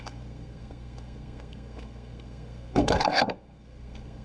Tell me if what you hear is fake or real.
fake